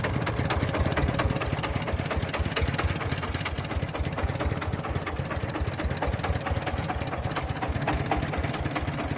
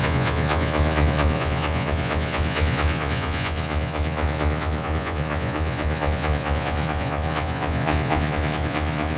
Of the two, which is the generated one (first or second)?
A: second